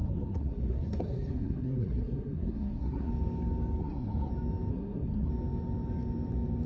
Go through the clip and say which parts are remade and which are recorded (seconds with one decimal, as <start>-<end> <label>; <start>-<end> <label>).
0.0-3.1 remade; 3.1-3.8 recorded; 3.8-4.3 remade; 4.3-4.7 recorded; 4.7-5.3 remade; 5.3-6.7 recorded